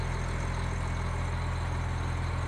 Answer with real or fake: real